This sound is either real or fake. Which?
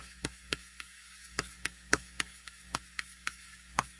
fake